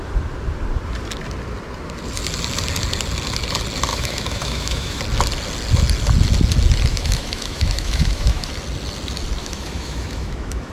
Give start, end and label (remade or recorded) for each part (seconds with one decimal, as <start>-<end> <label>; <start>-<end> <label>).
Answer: 0.0-3.9 recorded; 3.9-5.0 remade; 5.0-6.9 recorded; 6.9-8.5 remade; 8.5-9.4 recorded; 9.4-10.7 remade